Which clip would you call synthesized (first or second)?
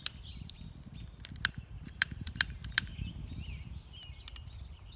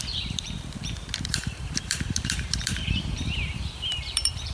second